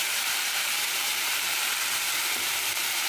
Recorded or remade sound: remade